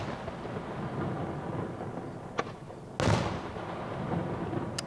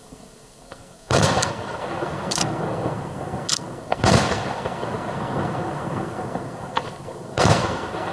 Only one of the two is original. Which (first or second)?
first